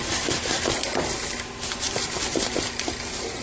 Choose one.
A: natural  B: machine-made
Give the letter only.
A